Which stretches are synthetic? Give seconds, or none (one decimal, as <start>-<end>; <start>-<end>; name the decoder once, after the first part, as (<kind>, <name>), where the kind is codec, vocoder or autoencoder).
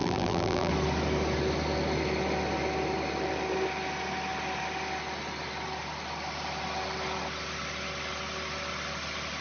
0.0-0.7 (vocoder, BigVGAN v2)